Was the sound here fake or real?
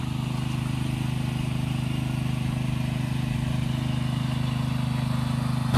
real